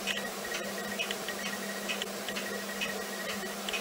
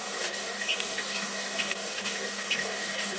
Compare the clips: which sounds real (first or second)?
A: first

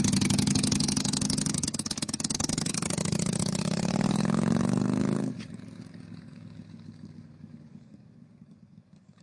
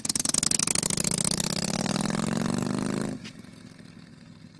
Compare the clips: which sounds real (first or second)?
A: second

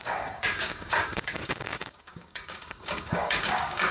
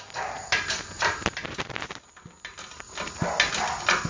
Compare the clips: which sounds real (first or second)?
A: second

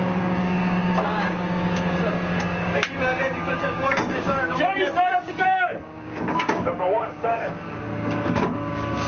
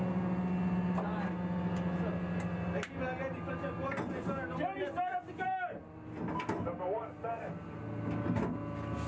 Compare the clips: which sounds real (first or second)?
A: second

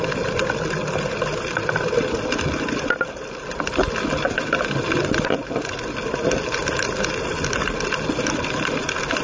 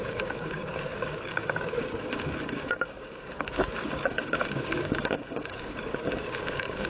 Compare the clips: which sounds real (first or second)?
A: first